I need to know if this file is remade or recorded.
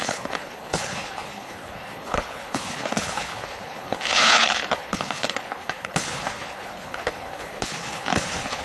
remade